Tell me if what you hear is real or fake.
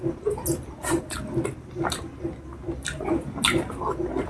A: real